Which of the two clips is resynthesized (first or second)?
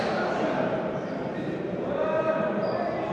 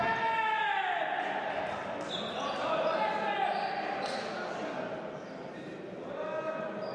first